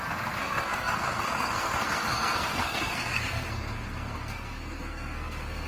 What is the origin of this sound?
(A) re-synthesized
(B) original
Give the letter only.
A